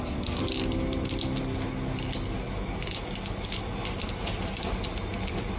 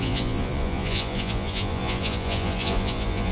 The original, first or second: first